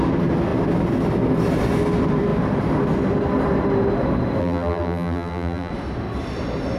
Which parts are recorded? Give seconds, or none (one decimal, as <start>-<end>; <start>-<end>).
0.0-4.4; 5.7-6.8